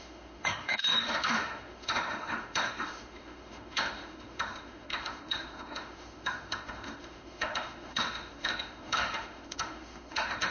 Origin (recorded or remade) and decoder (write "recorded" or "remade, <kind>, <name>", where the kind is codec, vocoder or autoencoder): remade, autoencoder, DAC-VAE